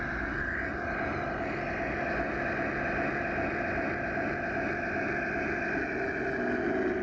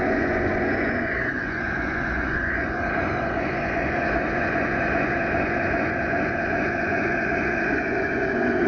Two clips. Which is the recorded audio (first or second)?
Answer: first